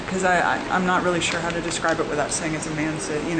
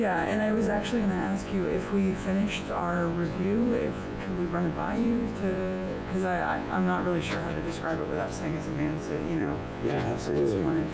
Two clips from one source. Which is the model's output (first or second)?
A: second